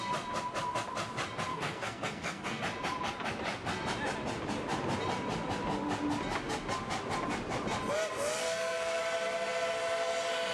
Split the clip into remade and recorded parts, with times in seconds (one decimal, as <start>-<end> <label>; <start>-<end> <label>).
0.0-1.5 recorded; 1.5-2.6 remade; 2.6-8.4 recorded; 8.4-9.0 remade; 9.0-10.5 recorded